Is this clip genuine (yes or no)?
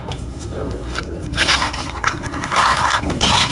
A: no